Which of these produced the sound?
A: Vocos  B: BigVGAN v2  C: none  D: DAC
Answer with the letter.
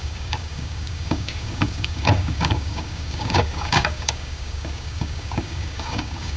D